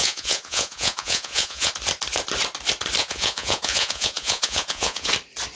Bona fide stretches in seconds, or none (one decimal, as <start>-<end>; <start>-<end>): 1.7-3.0; 5.1-5.6